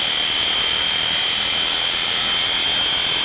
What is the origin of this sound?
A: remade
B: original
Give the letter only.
B